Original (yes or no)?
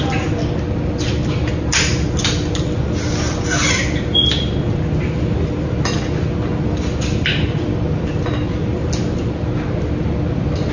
yes